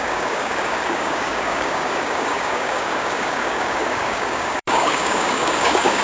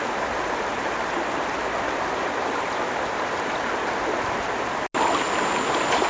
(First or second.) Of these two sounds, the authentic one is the second